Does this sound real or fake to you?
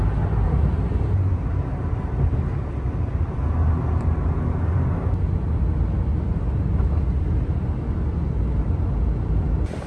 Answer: real